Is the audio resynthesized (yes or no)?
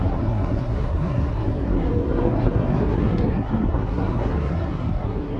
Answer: yes